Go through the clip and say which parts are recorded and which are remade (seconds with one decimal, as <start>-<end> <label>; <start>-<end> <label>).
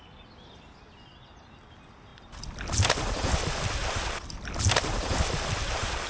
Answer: 0.0-6.1 recorded